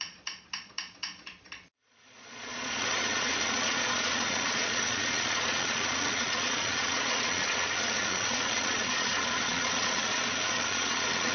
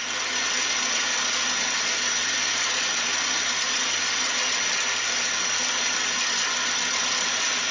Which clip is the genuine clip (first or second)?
second